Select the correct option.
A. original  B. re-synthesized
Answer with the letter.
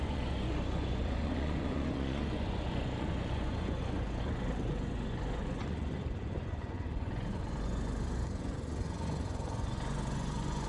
B